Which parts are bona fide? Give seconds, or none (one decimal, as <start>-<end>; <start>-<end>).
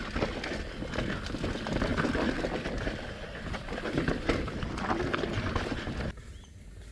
0.0-6.9